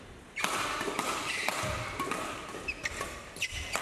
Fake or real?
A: real